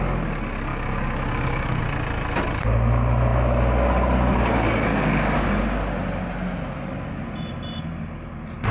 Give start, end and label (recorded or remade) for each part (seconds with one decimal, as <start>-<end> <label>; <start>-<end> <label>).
0.0-0.7 recorded; 0.7-1.8 remade; 1.8-4.9 recorded; 4.9-5.6 remade; 5.6-8.7 recorded